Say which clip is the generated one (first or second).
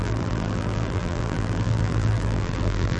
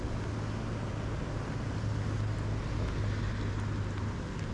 first